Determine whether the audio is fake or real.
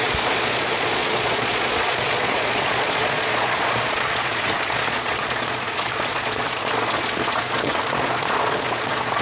fake